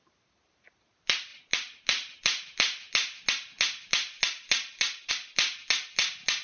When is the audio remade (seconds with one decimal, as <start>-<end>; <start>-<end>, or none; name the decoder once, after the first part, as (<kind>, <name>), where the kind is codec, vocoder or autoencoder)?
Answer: none